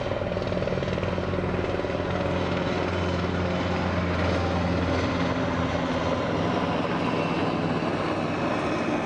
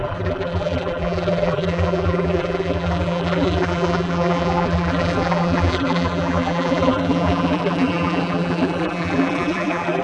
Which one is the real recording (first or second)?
first